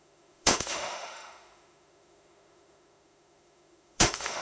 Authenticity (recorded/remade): remade